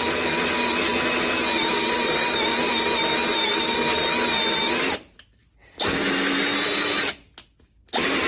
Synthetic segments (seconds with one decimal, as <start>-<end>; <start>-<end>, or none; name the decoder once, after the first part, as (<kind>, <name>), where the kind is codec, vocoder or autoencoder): none